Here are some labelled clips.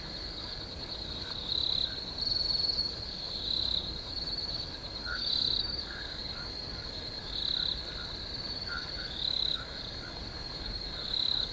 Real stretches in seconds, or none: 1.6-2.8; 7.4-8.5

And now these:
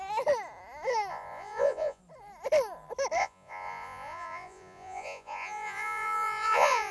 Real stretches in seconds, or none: 0.0-1.1; 2.0-3.2

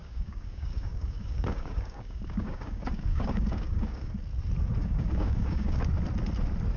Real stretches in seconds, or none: 4.1-4.8; 5.9-6.8